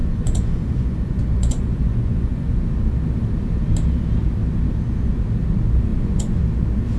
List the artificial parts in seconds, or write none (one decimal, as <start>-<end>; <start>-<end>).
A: 0.0-2.6; 5.9-6.4